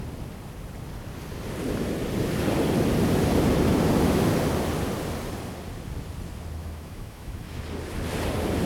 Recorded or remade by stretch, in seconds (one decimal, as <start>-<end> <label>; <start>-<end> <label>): 0.0-6.6 recorded; 6.6-7.6 remade; 7.6-8.6 recorded